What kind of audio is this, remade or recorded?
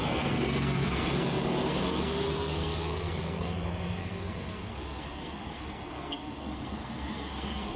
remade